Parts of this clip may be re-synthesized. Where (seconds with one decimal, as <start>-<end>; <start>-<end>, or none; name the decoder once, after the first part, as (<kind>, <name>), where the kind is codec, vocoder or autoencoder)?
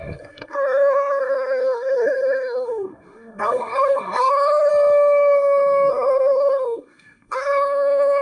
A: 0.0-4.7 (codec, SNAC); 5.9-8.2